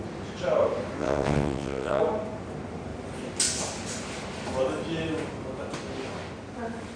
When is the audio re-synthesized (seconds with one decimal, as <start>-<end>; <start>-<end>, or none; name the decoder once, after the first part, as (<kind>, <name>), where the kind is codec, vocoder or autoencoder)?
1.0-2.0 (vocoder, WaveNeXt)